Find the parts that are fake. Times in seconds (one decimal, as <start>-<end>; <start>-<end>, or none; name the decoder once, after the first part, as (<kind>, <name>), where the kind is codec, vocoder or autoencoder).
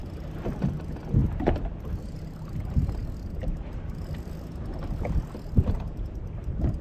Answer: none